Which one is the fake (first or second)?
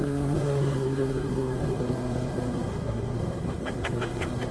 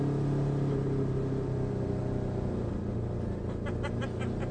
first